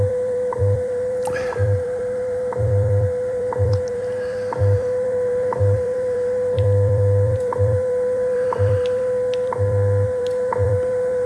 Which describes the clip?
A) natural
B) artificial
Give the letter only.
B